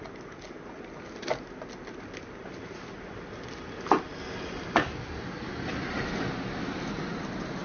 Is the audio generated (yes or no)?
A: no